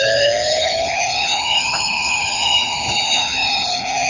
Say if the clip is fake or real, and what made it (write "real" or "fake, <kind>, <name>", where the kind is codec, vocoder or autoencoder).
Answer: fake, codec, HILCodec